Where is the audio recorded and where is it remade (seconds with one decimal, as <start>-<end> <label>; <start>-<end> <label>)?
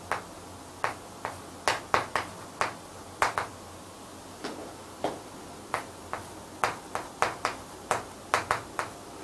0.0-9.2 recorded